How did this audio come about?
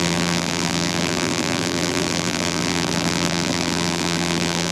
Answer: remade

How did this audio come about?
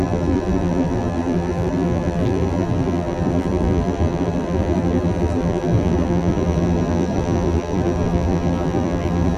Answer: remade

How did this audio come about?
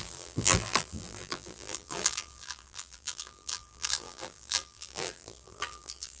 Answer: remade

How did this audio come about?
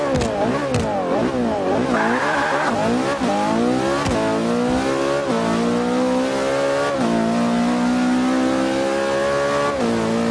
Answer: recorded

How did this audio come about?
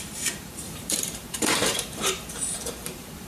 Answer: remade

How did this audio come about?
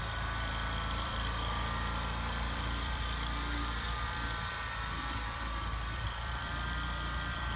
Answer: remade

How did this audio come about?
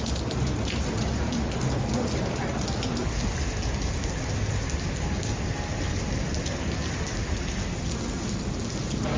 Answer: recorded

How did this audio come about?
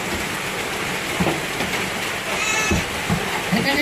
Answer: recorded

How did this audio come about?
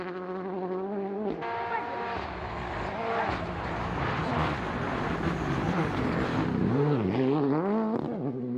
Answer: recorded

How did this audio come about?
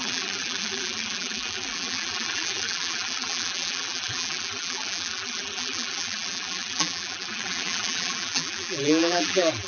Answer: remade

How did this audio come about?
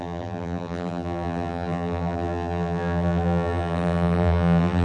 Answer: remade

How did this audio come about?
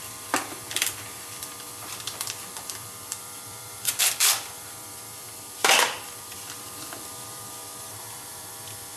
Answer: remade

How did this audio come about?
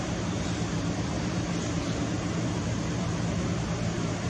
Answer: remade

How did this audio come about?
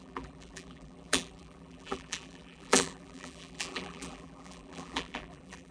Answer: remade